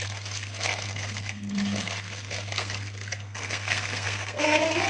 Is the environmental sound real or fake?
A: fake